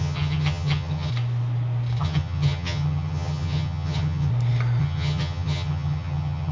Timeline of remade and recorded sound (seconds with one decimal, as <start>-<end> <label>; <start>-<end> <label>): 0.0-1.1 remade; 1.1-2.0 recorded; 2.0-4.3 remade; 4.3-4.8 recorded; 4.8-6.5 remade